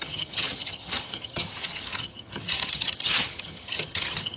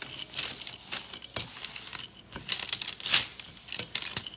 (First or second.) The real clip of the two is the second